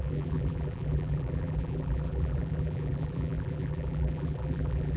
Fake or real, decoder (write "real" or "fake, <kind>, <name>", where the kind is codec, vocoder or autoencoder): fake, vocoder, BigVGAN v2